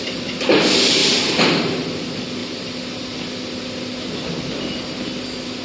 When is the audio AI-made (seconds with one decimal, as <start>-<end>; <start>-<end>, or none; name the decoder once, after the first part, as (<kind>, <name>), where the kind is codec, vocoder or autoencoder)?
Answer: 1.0-1.6 (vocoder, BigVGAN v2); 2.4-3.0